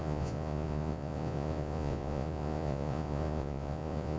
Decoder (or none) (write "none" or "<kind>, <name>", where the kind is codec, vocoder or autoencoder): vocoder, Vocos